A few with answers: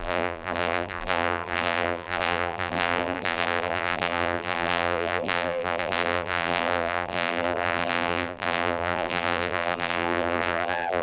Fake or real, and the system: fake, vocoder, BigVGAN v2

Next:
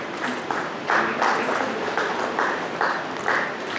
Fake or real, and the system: real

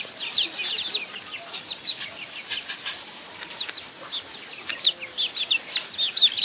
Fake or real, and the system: real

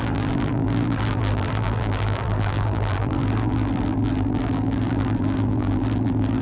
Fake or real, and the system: fake, vocoder, BigVGAN v2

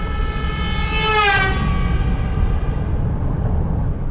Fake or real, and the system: real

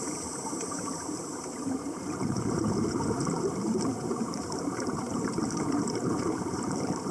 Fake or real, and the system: fake, vocoder, BigVGAN v2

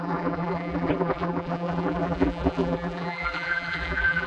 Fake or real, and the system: fake, vocoder, BigVGAN v2